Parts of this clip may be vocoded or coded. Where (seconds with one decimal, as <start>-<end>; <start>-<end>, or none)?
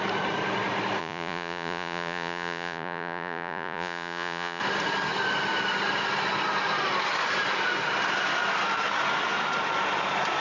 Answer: 1.0-4.6